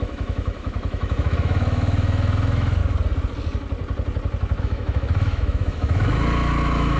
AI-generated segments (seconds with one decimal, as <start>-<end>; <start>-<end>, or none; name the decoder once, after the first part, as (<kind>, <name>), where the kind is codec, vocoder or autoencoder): 0.0-2.8 (autoencoder, DAC-VAE); 4.6-7.0

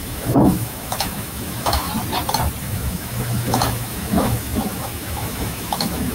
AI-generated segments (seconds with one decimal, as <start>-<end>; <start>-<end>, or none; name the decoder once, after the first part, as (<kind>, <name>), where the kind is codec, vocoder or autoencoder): 0.0-1.9 (autoencoder, DAC-VAE); 2.6-6.1

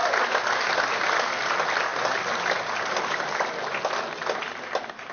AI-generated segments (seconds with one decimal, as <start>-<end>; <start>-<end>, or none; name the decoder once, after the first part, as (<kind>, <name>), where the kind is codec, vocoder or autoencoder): none

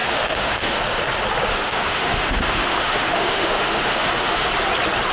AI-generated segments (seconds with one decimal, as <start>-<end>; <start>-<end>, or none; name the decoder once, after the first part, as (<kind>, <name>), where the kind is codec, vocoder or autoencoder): 0.0-0.8 (autoencoder, DAC-VAE); 1.5-4.5

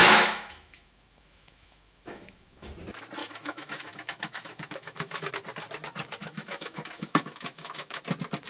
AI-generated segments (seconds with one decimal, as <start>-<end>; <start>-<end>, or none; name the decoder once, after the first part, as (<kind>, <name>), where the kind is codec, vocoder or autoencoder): 0.0-2.7 (autoencoder, DAC-VAE); 3.2-5.3; 6.2-8.0

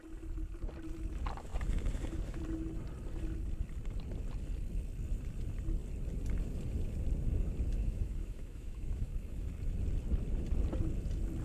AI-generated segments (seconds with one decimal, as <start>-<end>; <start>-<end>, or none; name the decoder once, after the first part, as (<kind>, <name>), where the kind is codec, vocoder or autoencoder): 7.8-9.5 (autoencoder, DAC-VAE)